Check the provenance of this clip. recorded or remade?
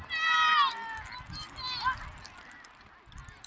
recorded